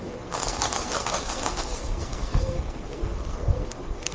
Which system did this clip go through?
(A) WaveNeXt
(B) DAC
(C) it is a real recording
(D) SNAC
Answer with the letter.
D